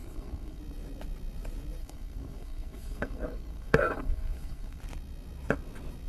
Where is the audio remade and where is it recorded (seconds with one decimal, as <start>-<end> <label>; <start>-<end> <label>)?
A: 0.0-0.6 remade; 0.6-1.8 recorded; 1.8-4.8 remade; 4.8-6.1 recorded